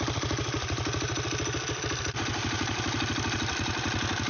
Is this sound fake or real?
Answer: real